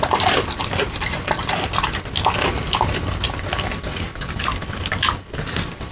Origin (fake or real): real